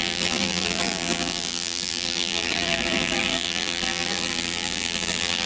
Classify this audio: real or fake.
fake